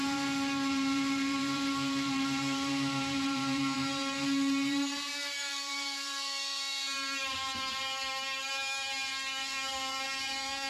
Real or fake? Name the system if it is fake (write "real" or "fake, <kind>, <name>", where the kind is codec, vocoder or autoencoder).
fake, vocoder, BigVGAN v2